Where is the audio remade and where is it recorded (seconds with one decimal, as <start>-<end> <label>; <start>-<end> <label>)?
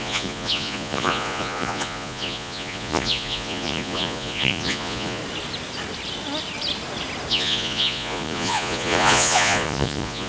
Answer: 0.0-5.2 remade; 5.2-7.3 recorded; 7.3-10.3 remade